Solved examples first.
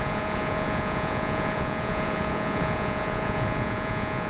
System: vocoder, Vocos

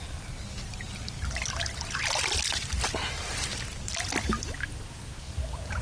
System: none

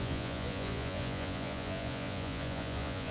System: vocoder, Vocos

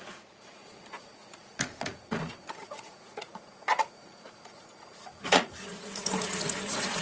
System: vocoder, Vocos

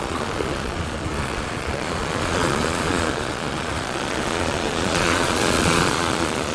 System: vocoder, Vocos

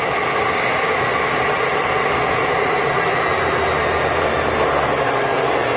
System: none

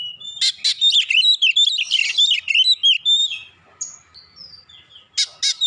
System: none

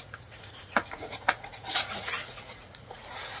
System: vocoder, Vocos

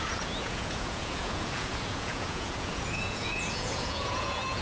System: vocoder, Vocos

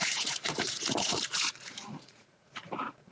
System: vocoder, Vocos